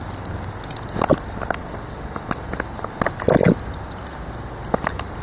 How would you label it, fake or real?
real